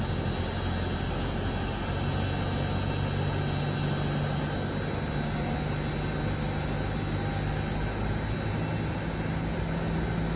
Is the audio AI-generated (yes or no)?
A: no